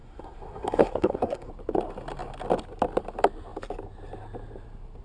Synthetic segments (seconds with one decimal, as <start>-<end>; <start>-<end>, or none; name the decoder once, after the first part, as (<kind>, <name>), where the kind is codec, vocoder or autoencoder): 0.0-1.5 (codec, SNAC)

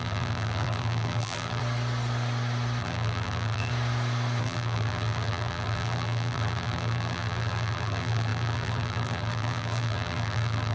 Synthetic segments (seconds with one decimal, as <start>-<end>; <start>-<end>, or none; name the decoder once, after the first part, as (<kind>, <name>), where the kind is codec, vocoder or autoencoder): 0.0-1.6 (vocoder, BigVGAN v2); 2.8-3.7; 4.4-10.7

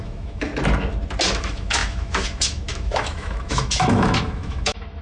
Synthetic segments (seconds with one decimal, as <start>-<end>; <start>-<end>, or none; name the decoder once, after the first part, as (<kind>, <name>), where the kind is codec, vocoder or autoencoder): 0.0-0.5 (autoencoder, DAC-VAE); 1.4-5.0

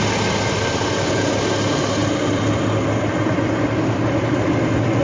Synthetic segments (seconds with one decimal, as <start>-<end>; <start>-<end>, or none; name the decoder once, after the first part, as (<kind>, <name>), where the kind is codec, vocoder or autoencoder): none

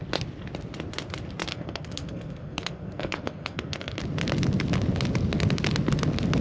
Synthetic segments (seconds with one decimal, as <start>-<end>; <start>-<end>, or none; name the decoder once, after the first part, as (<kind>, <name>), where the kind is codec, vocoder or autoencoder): 1.5-4.0 (codec, SNAC)